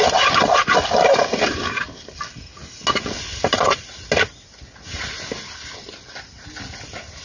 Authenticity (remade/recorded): recorded